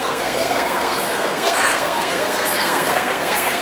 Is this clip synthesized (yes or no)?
yes